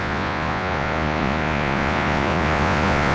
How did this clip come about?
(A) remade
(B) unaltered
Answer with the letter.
A